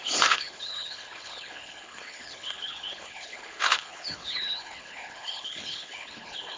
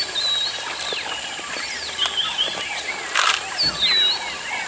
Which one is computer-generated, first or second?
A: first